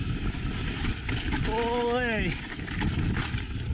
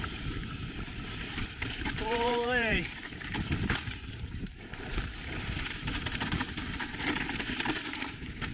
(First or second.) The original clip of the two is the first